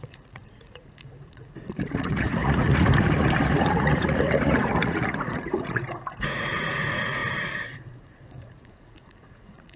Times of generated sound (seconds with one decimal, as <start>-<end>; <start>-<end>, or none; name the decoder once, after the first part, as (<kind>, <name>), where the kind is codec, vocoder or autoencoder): 0.0-7.2 (vocoder, Vocos); 7.7-9.8